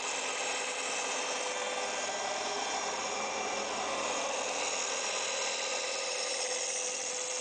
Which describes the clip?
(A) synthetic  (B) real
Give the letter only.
B